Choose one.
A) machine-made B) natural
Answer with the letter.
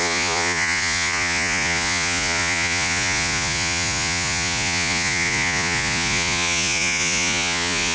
A